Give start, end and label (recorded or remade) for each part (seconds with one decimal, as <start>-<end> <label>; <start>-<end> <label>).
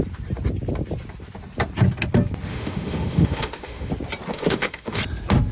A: 0.0-2.5 recorded; 2.5-3.9 remade; 3.9-4.3 recorded; 4.3-5.0 remade; 5.0-5.5 recorded